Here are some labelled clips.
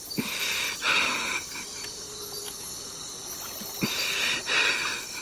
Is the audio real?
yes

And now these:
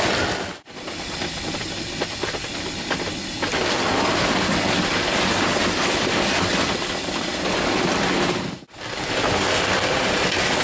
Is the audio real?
yes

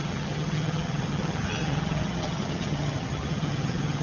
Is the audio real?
no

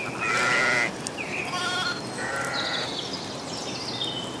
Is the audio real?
yes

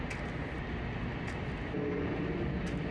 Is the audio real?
yes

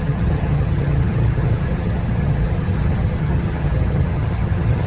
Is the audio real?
no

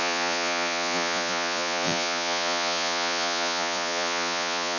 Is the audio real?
no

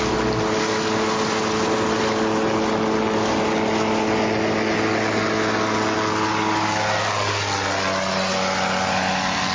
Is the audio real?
yes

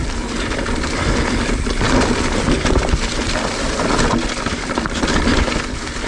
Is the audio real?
yes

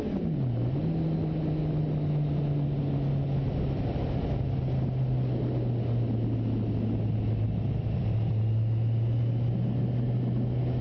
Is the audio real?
yes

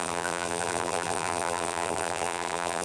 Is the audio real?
no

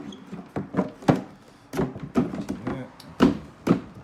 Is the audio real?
yes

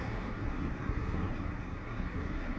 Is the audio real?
no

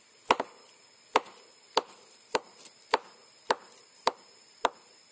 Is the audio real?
yes